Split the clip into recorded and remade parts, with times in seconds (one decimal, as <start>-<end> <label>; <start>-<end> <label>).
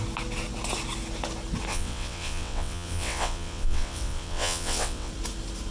0.0-1.7 recorded; 1.7-5.1 remade; 5.1-5.7 recorded